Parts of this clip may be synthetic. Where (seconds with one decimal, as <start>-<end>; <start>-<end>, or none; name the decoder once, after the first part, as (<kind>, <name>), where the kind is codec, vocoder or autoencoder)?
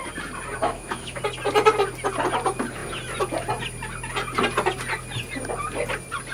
0.6-1.2 (autoencoder, DAC-VAE)